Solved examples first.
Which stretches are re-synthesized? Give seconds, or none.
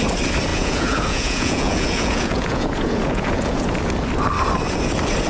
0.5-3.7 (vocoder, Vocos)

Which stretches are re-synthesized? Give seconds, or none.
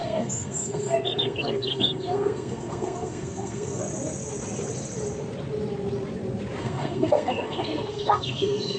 0.0-3.8 (codec, SNAC); 6.6-8.8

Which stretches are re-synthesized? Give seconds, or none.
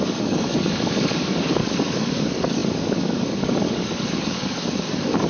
0.0-5.3 (codec, DAC)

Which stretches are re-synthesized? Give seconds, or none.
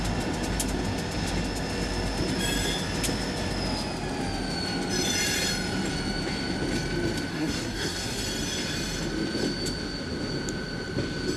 7.3-8.2 (codec, SNAC)